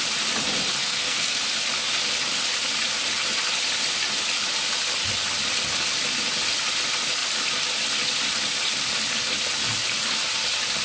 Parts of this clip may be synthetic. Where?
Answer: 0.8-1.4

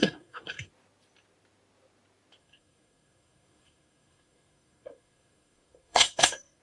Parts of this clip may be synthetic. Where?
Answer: 0.0-0.7; 2.4-6.6

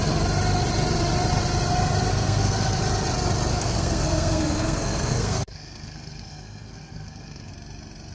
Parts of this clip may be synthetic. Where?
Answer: 2.1-2.8; 3.5-7.5

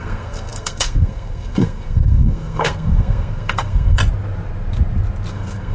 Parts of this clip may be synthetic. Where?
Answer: 0.0-4.0; 5.3-5.7

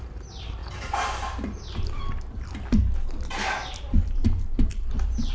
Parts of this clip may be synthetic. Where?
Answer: 0.0-0.6; 3.8-5.3

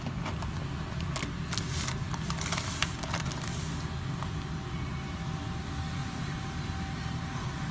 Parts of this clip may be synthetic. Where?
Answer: 6.0-6.5

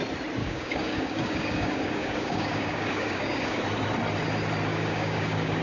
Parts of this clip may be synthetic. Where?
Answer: 0.4-3.6; 4.7-5.6